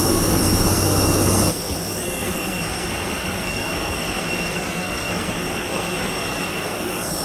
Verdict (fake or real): fake